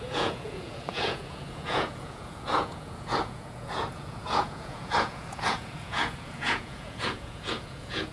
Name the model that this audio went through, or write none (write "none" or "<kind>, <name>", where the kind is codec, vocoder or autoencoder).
vocoder, Vocos